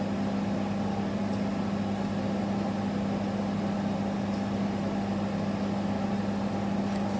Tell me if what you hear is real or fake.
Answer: real